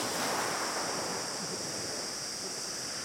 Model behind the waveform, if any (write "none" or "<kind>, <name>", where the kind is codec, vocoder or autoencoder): none